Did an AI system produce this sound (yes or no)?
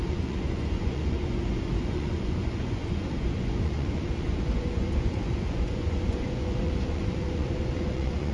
yes